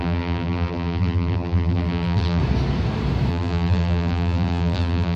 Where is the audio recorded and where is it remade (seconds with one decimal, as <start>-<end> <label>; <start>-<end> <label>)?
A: 0.0-2.4 remade; 2.4-3.3 recorded; 3.3-5.2 remade